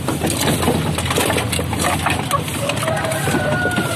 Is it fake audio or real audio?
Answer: real